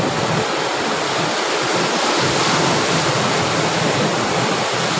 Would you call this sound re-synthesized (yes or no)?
no